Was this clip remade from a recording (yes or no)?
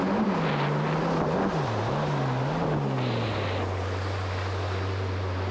no